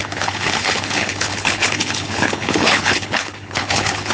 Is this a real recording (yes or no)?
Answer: no